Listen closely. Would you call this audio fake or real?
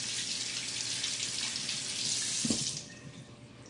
real